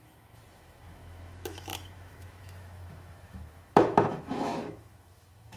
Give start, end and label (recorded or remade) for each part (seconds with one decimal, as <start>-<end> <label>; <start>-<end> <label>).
0.0-5.6 remade